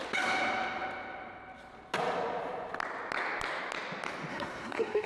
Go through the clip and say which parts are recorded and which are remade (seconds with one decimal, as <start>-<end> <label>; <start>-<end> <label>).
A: 0.0-4.3 recorded; 4.3-5.1 remade